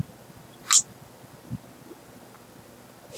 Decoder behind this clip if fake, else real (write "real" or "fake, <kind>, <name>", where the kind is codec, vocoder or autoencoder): real